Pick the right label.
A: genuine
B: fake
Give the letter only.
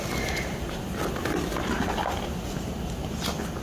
A